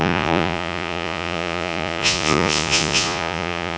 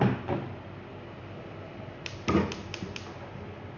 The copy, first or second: first